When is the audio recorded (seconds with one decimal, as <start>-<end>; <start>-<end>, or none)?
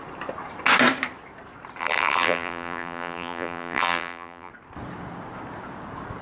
0.0-1.8; 4.5-6.2